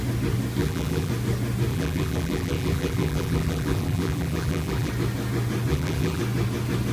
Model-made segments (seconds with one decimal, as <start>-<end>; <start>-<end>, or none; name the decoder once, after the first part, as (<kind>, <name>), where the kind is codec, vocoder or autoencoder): 0.6-1.1 (vocoder, BigVGAN v2); 1.7-4.9; 5.7-6.2